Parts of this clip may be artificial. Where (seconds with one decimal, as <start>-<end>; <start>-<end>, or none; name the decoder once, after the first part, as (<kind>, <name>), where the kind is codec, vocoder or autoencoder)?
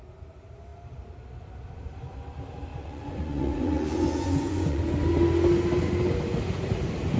2.7-4.8 (vocoder, Vocos)